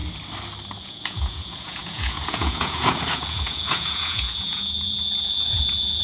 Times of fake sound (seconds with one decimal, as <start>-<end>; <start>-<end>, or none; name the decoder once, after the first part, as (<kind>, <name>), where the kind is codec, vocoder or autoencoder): 0.8-6.0 (vocoder, Vocos)